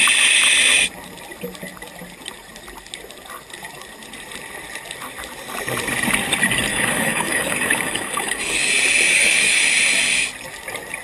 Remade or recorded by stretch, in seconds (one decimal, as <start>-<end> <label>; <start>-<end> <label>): 0.0-6.7 recorded; 6.7-8.7 remade; 8.7-9.1 recorded; 9.1-9.6 remade; 9.6-11.0 recorded